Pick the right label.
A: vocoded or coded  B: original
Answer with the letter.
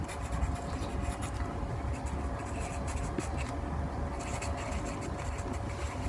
B